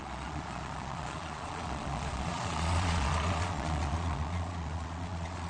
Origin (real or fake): fake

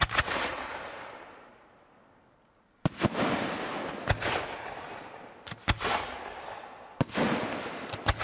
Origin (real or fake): real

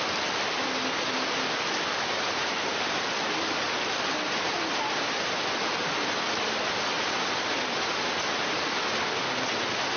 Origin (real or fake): real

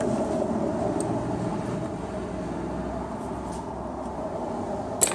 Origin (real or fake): real